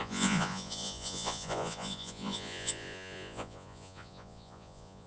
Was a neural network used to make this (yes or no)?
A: yes